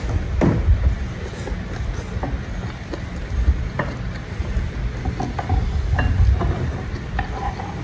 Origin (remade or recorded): recorded